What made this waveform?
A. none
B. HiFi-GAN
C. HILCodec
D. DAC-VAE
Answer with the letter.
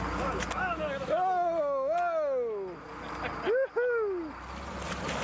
A